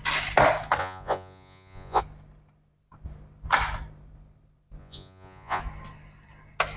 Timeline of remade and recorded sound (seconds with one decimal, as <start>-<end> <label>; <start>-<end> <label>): 0.0-0.8 recorded; 0.8-2.0 remade; 2.0-4.8 recorded; 4.8-5.6 remade; 5.6-6.8 recorded